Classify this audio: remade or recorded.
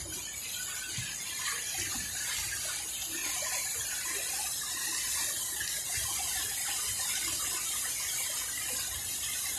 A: recorded